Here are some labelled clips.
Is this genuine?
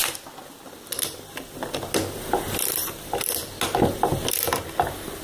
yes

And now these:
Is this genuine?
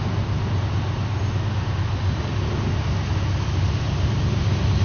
yes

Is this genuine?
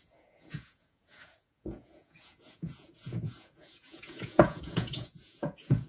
no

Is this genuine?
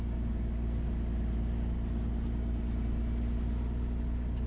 yes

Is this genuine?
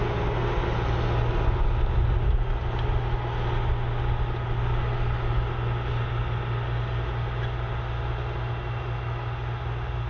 yes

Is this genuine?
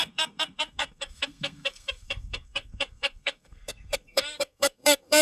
no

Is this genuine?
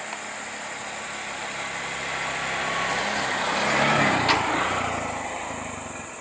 yes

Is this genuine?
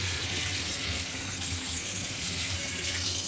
no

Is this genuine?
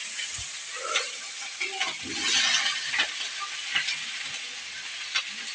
yes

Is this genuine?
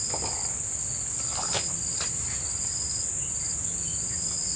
yes